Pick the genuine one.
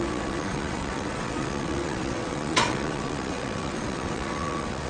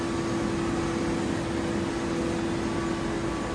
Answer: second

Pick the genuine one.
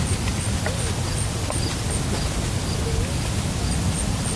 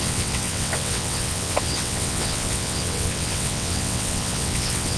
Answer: first